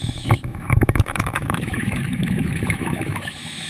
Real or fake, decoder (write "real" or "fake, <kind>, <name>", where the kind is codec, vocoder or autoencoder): fake, autoencoder, DAC-VAE